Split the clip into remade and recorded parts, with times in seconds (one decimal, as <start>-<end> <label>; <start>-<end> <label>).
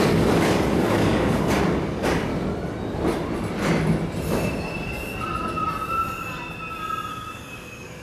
0.0-2.3 remade; 2.3-7.1 recorded; 7.1-8.0 remade